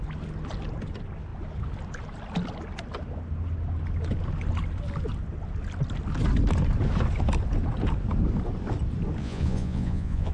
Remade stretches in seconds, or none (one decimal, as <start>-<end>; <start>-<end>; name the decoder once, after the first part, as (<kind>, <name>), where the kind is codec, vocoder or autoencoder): 9.2-10.3 (vocoder, Vocos)